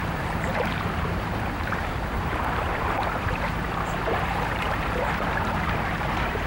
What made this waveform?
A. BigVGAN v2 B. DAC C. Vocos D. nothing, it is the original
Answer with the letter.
A